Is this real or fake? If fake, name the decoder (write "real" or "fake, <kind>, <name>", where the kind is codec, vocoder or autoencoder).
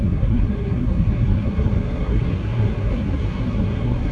fake, codec, SNAC